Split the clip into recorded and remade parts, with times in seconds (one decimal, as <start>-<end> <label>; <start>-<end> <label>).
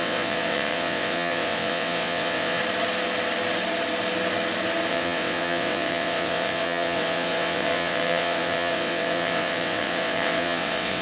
0.0-2.6 remade; 2.6-4.9 recorded; 4.9-11.0 remade